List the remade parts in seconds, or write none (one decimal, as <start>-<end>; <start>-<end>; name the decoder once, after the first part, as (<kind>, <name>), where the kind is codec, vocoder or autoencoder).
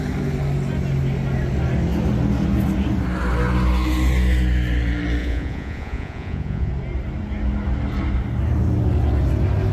5.2-6.7 (vocoder, Vocos)